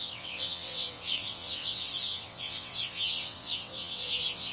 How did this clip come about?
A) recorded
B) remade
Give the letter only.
B